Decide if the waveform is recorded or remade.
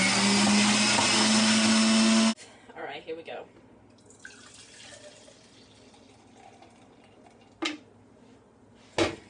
recorded